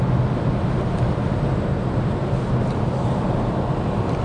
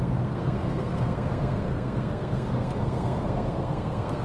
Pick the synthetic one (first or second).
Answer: second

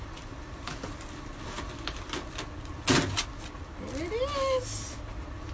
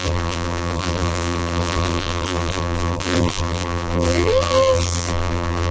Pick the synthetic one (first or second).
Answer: second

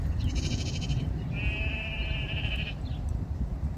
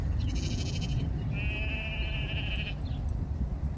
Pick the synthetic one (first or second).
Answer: first